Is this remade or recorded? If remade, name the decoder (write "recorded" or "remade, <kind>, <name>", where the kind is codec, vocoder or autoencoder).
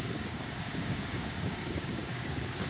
remade, codec, DAC